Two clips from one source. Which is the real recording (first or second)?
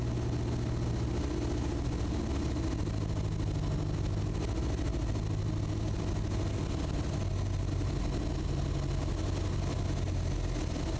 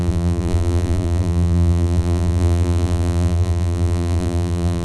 first